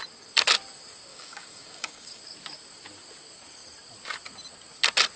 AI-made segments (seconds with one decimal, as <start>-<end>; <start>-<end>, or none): 1.1-2.2